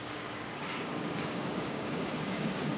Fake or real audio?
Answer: fake